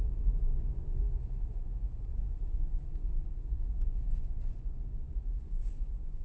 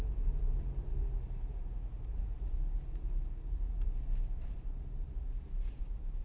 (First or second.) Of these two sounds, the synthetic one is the first